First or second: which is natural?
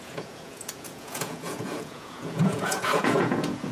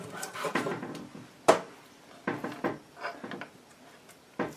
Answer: second